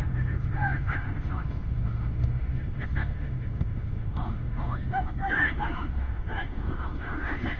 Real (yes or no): no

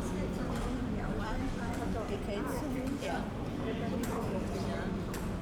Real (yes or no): yes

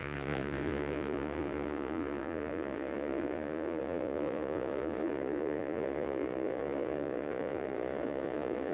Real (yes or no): no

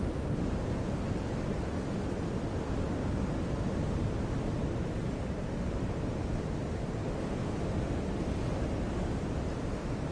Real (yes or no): yes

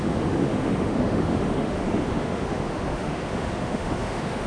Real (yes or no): no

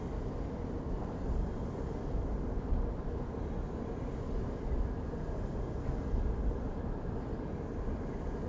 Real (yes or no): yes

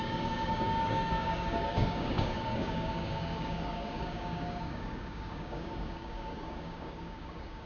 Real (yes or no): no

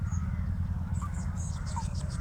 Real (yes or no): no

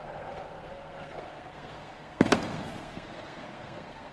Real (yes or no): no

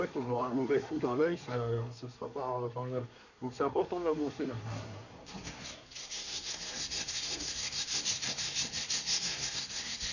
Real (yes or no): no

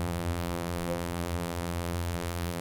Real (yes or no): no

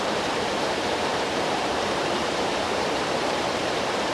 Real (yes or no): no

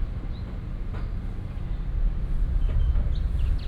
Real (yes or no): yes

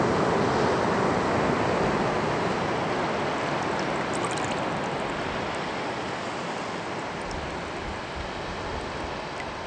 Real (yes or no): yes